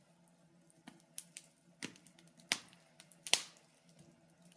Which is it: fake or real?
real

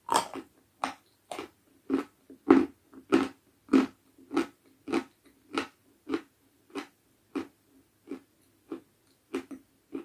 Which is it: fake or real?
real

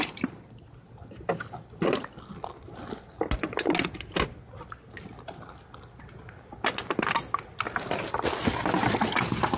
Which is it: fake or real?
real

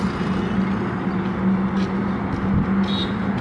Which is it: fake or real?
real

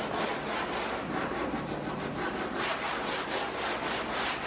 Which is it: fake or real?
real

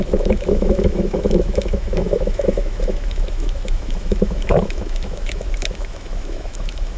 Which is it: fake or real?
fake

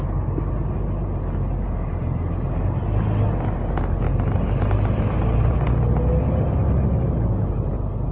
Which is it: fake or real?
real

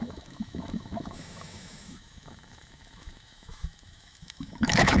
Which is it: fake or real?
fake